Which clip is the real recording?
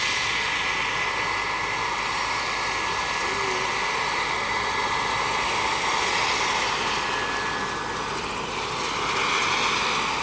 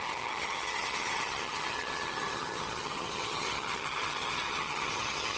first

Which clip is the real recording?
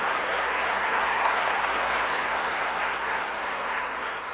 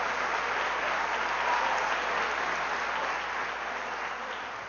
second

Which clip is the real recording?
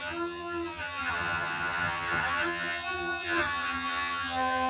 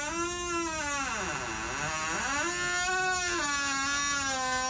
second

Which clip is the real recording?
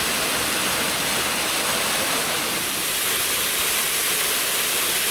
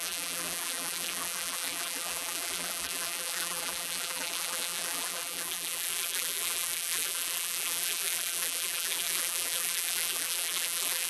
first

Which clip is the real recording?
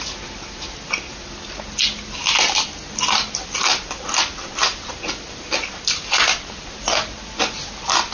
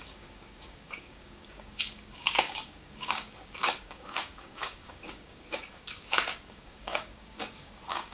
first